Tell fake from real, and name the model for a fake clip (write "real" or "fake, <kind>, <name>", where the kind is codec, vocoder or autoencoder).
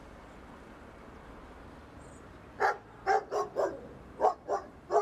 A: real